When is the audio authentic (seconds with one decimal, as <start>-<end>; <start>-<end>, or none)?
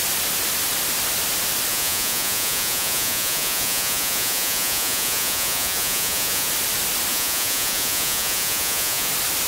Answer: 0.0-1.7; 6.5-7.1; 9.1-9.5